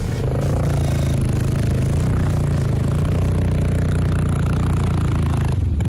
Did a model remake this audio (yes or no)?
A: no